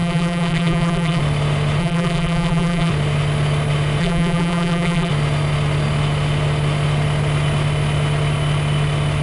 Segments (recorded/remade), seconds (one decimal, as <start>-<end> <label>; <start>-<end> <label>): 0.0-1.2 remade; 1.2-1.8 recorded; 1.8-2.9 remade; 2.9-4.0 recorded; 4.0-5.1 remade; 5.1-9.2 recorded

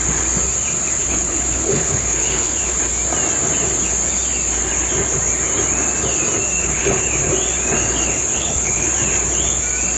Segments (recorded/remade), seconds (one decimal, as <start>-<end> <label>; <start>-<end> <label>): 0.0-1.0 recorded; 1.0-2.8 remade; 2.8-6.6 recorded; 6.6-7.1 remade; 7.1-8.3 recorded; 8.3-8.9 remade; 8.9-10.0 recorded

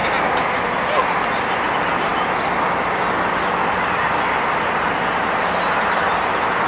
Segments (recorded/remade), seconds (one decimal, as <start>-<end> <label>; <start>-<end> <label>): 0.0-6.7 recorded

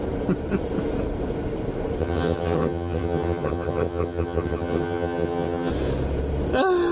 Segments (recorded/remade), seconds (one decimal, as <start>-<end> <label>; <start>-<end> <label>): 0.0-2.0 recorded; 2.0-5.7 remade; 5.7-6.9 recorded

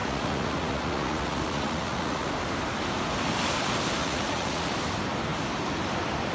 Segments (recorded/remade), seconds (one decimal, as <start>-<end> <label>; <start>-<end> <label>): 0.0-2.3 remade; 2.3-4.0 recorded; 4.0-4.7 remade; 4.7-6.3 recorded